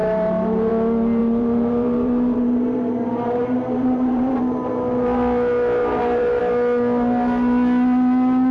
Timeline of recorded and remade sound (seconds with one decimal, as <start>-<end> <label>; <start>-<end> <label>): 0.0-0.7 remade; 0.7-1.2 recorded; 1.2-4.7 remade; 4.7-5.8 recorded; 5.8-6.4 remade; 6.4-8.5 recorded

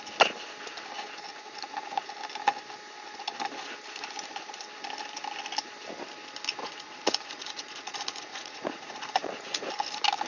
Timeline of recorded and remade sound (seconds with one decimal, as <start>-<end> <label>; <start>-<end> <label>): 0.0-1.3 recorded; 1.3-2.1 remade; 2.1-6.6 recorded; 6.6-9.7 remade; 9.7-10.3 recorded

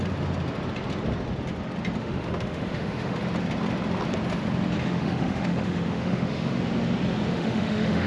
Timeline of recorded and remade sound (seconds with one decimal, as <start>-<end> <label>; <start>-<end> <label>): 0.0-2.0 recorded; 2.0-3.2 remade; 3.2-4.8 recorded; 4.8-6.6 remade; 6.6-7.3 recorded; 7.3-8.1 remade

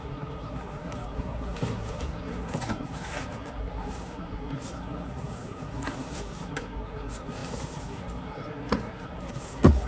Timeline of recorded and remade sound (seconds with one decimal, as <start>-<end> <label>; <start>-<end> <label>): 0.0-9.9 remade

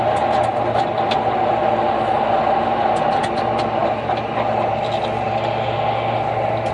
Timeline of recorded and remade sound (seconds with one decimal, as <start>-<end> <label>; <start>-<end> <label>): 0.0-6.7 recorded

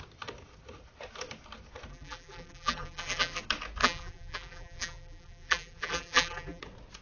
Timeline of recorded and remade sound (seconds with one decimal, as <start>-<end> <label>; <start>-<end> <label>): 0.0-1.9 recorded; 1.9-3.4 remade; 3.4-3.8 recorded; 3.8-6.6 remade; 6.6-7.0 recorded

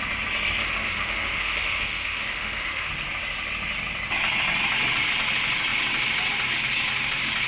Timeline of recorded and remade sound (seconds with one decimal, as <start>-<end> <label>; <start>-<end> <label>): 0.0-0.6 recorded; 0.6-2.9 remade; 2.9-7.5 recorded